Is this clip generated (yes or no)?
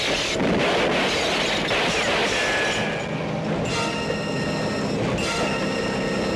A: no